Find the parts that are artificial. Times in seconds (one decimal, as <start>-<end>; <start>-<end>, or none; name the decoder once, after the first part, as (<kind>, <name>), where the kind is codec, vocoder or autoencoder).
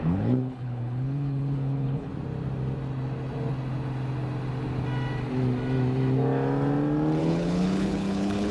0.0-2.1 (codec, HILCodec); 7.2-8.5